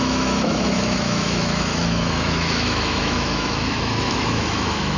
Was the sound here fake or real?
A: fake